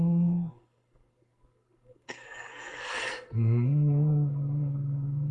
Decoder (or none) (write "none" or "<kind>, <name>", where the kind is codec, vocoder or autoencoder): codec, SNAC